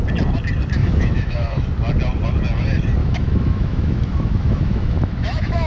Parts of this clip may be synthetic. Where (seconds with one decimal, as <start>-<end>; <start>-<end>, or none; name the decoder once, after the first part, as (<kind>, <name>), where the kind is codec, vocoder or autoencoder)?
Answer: 0.8-1.7 (autoencoder, DAC-VAE); 3.0-5.7

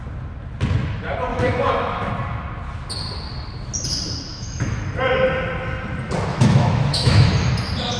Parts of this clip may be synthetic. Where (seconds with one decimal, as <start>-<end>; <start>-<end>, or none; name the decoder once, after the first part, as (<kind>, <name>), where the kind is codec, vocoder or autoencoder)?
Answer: 1.3-2.1 (autoencoder, DAC-VAE); 4.3-4.8; 6.3-7.3

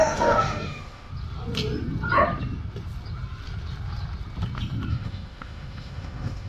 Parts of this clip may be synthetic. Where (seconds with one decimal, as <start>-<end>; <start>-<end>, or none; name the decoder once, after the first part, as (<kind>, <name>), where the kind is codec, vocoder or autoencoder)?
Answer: 0.0-1.1 (autoencoder, DAC-VAE); 4.9-6.5

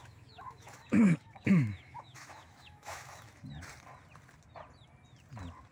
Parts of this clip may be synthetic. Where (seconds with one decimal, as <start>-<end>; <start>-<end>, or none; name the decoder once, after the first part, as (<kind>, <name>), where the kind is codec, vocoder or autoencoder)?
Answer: 0.0-3.4 (autoencoder, DAC-VAE)

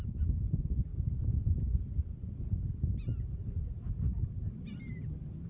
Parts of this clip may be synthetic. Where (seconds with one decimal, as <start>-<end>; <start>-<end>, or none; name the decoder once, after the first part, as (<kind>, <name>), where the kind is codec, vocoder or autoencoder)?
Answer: none

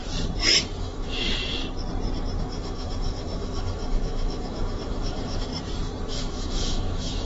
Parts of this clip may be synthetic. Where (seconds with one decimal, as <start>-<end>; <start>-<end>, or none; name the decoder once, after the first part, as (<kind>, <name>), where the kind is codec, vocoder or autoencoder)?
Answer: 0.8-1.6 (autoencoder, DAC-VAE); 2.4-5.5; 6.1-7.2

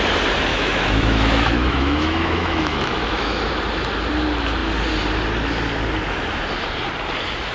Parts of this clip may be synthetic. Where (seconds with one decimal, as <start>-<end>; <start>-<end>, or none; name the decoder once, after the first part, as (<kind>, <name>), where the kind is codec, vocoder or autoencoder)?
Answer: 0.5-3.5 (autoencoder, DAC-VAE)